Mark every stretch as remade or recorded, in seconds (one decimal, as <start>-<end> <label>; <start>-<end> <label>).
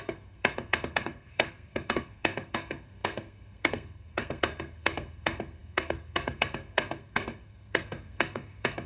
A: 0.0-8.9 remade